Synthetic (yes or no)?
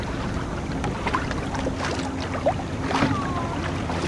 no